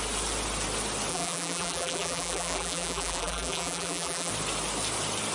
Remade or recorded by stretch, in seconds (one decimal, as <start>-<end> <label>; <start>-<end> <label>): 0.0-1.1 recorded; 1.1-4.3 remade; 4.3-5.3 recorded